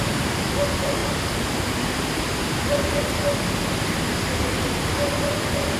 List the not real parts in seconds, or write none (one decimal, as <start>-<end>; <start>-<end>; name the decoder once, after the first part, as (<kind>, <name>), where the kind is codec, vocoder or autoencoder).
none